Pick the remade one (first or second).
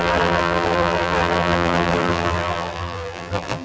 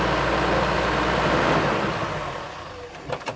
first